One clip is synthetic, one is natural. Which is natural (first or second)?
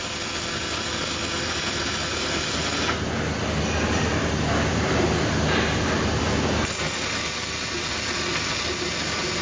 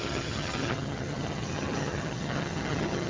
first